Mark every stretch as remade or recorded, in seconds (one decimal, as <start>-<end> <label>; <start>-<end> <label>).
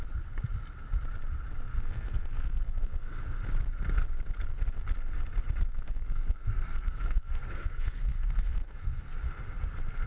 0.0-1.7 recorded; 1.7-3.2 remade; 3.2-5.7 recorded; 5.7-9.0 remade; 9.0-10.1 recorded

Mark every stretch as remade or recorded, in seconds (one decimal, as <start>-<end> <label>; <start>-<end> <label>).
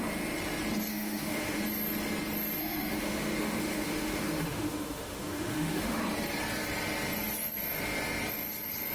0.0-0.9 recorded; 0.9-1.6 remade; 1.6-2.6 recorded; 2.6-6.0 remade; 6.0-8.9 recorded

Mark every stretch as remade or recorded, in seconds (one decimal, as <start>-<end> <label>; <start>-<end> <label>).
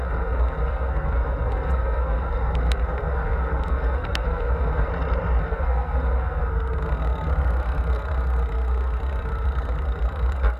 0.0-4.9 remade; 4.9-5.4 recorded; 5.4-10.6 remade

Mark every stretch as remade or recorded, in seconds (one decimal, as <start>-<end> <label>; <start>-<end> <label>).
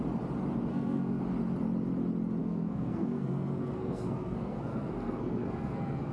0.0-0.7 recorded; 0.7-1.2 remade; 1.2-2.4 recorded; 2.4-6.1 remade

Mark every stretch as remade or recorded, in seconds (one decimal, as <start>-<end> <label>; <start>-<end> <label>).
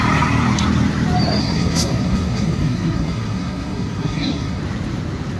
0.0-1.4 recorded; 1.4-4.6 remade; 4.6-5.4 recorded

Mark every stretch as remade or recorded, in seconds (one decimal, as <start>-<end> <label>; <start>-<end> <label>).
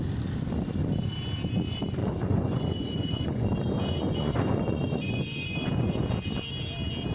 0.0-2.0 recorded; 2.0-6.1 remade; 6.1-7.1 recorded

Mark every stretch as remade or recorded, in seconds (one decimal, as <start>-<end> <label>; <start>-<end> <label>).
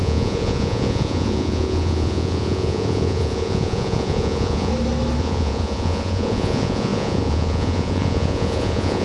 0.0-4.7 remade; 4.7-5.2 recorded; 5.2-9.0 remade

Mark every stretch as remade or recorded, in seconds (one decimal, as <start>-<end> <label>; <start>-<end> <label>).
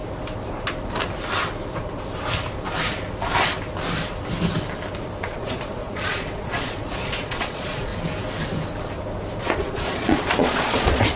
0.0-5.2 recorded; 5.2-7.9 remade; 7.9-9.4 recorded; 9.4-11.2 remade